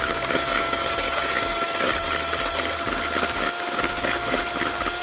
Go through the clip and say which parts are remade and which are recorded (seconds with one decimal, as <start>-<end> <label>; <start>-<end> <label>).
0.0-1.9 remade; 1.9-3.2 recorded; 3.2-4.5 remade; 4.5-5.0 recorded